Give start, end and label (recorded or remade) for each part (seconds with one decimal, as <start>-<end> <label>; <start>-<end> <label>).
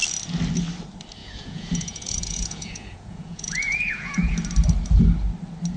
0.0-1.2 recorded; 1.2-4.3 remade; 4.3-5.8 recorded